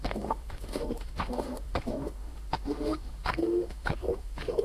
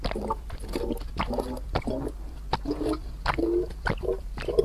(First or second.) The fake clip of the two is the first